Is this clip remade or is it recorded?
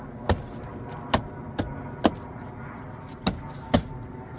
recorded